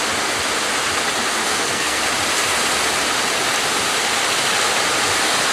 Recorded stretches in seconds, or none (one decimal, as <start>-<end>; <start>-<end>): 0.0-1.4; 2.0-5.5

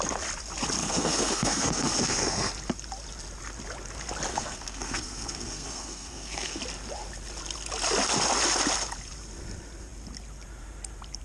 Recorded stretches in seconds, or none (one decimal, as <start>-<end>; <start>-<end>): 0.0-0.8; 2.5-4.3; 6.6-11.2

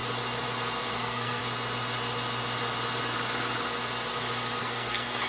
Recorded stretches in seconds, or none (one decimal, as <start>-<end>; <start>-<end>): 0.0-0.9; 1.4-4.6